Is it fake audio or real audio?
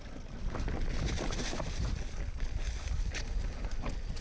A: real